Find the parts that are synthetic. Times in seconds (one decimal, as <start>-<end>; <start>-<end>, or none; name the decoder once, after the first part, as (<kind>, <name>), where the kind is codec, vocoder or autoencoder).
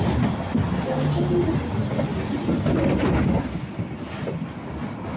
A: none